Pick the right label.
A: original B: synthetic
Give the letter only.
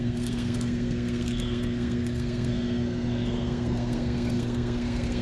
B